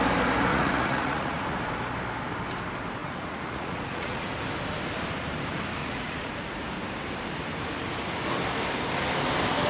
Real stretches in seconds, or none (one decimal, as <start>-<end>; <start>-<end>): 0.0-0.5; 1.6-3.0; 4.3-5.8; 6.3-9.7